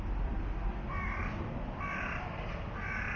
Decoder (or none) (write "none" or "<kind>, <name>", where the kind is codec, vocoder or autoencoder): none